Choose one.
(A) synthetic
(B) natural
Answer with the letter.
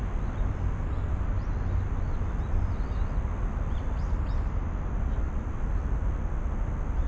B